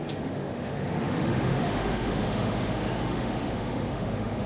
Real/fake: fake